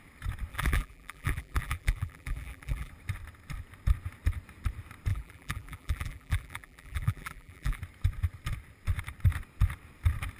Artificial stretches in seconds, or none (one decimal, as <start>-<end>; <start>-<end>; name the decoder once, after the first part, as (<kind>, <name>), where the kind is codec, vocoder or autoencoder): 0.5-2.9 (vocoder, BigVGAN v2); 5.1-7.8